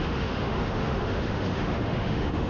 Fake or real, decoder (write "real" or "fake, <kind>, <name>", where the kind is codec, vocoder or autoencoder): fake, autoencoder, DAC-VAE